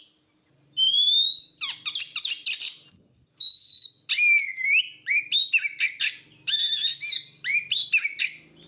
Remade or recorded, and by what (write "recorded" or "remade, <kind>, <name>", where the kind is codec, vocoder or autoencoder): recorded